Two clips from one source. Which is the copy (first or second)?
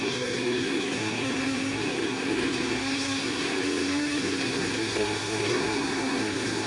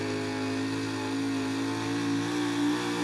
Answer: first